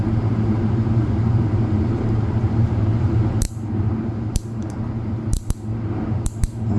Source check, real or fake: fake